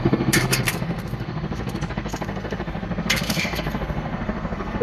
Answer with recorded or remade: remade